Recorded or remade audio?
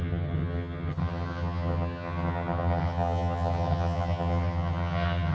remade